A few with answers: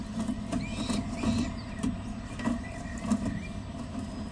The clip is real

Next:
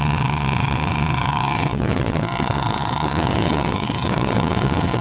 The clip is fake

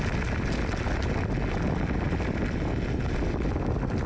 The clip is real